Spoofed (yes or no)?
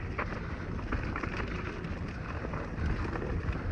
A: no